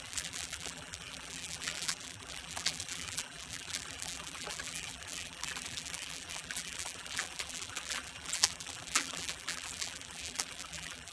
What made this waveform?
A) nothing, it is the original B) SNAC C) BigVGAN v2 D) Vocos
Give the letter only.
C